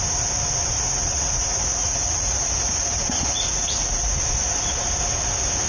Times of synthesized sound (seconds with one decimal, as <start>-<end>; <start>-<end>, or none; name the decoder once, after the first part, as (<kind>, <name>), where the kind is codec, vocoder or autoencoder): 0.9-4.2 (vocoder, Vocos)